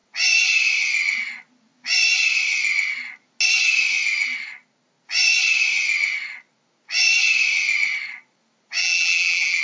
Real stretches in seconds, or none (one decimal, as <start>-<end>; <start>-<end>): 0.0-8.8